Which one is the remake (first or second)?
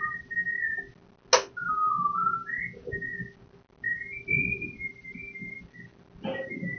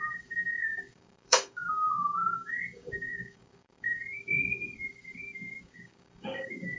second